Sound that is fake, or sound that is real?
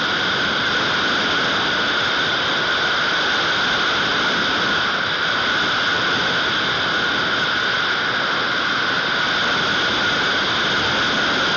real